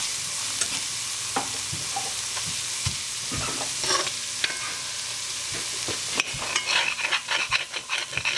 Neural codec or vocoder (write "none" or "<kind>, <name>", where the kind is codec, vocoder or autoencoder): none